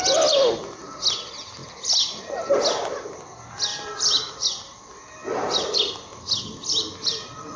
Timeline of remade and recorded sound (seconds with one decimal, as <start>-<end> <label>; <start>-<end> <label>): 0.0-3.7 recorded; 3.7-4.8 remade; 4.8-7.6 recorded